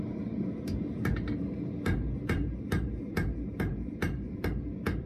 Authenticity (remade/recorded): remade